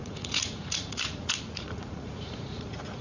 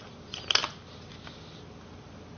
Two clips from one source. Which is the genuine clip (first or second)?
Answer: second